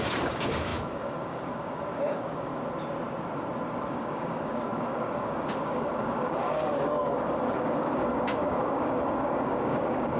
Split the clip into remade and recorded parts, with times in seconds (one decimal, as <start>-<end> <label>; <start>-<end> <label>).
0.0-2.5 remade; 2.5-3.9 recorded; 3.9-10.2 remade